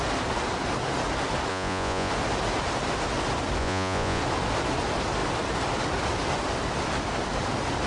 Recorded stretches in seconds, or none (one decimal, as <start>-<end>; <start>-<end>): 0.0-1.5; 2.1-3.6; 4.2-7.9